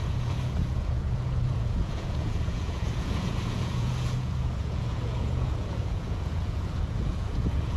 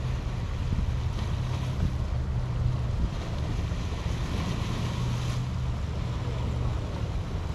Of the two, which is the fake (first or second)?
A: first